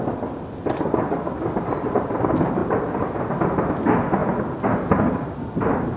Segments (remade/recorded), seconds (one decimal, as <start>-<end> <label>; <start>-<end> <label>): 0.0-2.6 recorded; 2.6-3.1 remade; 3.1-6.0 recorded